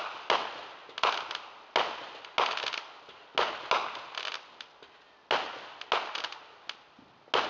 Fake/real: real